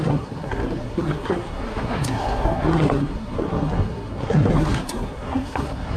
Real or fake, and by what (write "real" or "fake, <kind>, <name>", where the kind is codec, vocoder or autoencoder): fake, codec, SNAC